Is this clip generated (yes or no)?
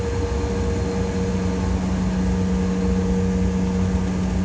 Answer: no